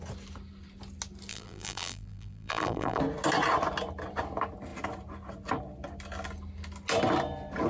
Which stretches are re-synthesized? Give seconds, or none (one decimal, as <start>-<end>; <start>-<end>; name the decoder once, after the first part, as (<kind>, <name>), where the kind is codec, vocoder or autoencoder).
1.3-3.0 (vocoder, BigVGAN v2)